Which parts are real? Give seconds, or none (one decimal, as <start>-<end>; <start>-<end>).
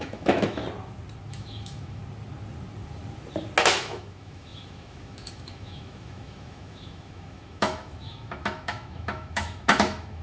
0.6-1.3; 2.0-3.6